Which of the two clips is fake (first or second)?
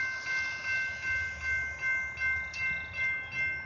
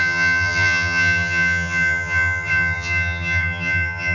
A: second